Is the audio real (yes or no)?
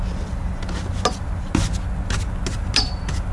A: yes